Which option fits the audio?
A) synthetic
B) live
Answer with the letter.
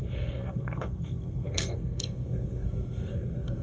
A